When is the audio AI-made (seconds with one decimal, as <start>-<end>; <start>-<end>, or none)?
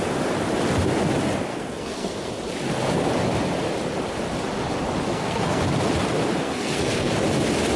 1.5-2.3; 5.1-5.6; 6.4-7.1